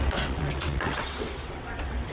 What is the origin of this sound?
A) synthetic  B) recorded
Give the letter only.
A